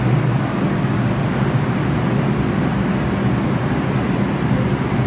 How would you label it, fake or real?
real